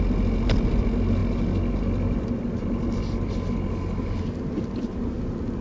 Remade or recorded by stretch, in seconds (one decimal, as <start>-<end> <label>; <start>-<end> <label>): 0.0-5.6 recorded